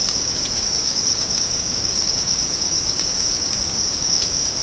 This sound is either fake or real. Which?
fake